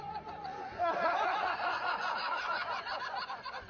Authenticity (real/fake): fake